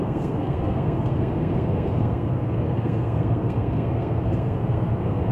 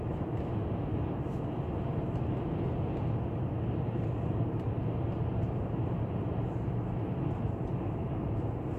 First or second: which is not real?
first